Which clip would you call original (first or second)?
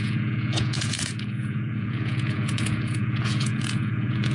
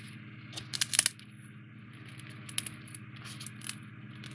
second